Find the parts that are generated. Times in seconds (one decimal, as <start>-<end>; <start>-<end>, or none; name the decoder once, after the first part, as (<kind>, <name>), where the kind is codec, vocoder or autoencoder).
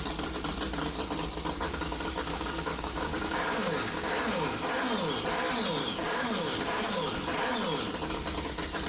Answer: 2.3-4.7 (codec, DAC); 5.8-7.1